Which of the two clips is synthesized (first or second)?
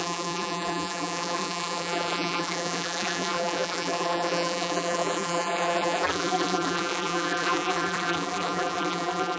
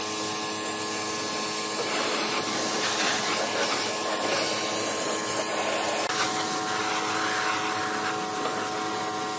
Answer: first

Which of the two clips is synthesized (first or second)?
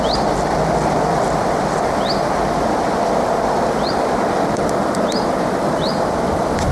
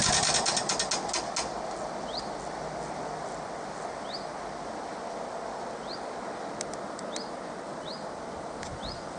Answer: first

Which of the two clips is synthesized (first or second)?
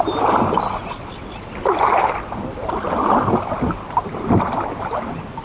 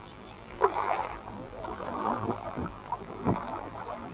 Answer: second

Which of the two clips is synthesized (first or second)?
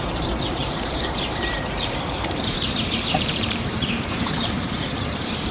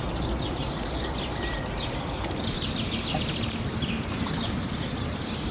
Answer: first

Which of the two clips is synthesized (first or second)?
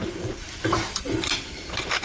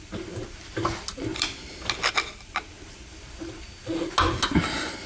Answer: first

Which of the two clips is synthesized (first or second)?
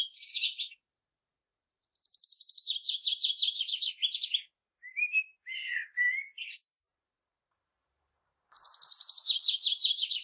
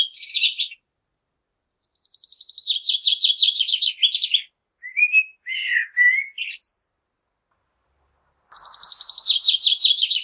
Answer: first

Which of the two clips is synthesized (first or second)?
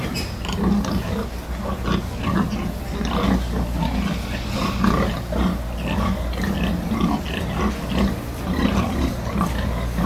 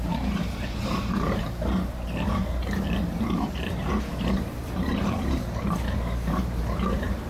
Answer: second